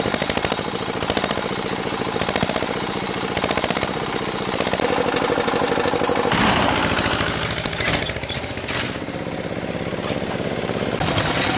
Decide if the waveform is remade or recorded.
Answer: recorded